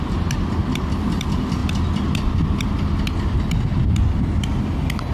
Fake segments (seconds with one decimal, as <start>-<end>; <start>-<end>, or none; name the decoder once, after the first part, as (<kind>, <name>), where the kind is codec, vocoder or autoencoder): none

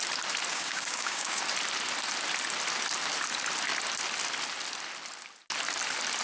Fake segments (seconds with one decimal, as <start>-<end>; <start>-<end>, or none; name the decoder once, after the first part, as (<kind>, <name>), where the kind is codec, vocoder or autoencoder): 0.5-1.4 (codec, DAC)

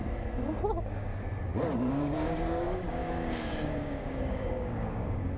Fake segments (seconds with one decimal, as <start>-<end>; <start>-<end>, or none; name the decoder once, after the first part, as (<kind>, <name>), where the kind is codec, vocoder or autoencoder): 0.7-1.1 (codec, DAC); 1.9-5.4

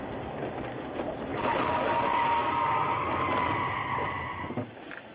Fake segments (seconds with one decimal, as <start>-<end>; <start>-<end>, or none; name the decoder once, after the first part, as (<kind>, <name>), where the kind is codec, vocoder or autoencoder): none